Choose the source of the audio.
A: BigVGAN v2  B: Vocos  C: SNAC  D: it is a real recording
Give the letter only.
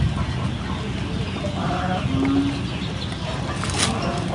D